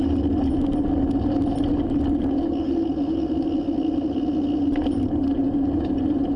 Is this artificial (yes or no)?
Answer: no